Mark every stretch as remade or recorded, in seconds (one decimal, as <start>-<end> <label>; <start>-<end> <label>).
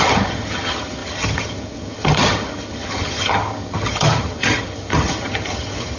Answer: 0.0-6.0 remade